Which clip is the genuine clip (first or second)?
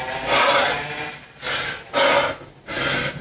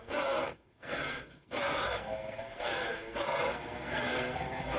first